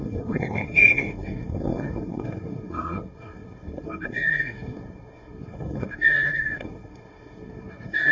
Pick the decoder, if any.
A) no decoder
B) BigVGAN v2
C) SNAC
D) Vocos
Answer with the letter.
C